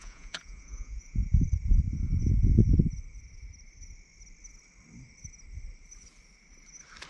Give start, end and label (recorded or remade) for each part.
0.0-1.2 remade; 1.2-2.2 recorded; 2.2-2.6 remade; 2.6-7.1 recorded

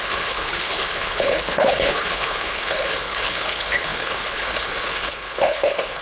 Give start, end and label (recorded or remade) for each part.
0.0-6.0 remade

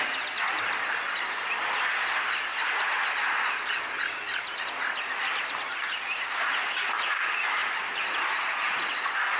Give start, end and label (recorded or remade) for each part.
0.0-9.4 recorded